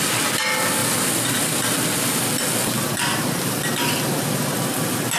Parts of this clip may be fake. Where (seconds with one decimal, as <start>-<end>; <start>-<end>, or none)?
none